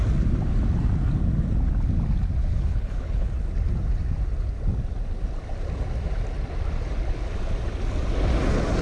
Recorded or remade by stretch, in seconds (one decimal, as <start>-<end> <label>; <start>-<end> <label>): 0.0-2.5 recorded; 2.5-3.3 remade; 3.3-8.8 recorded